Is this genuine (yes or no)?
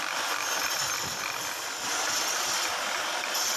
yes